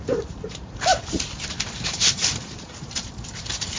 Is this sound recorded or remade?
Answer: remade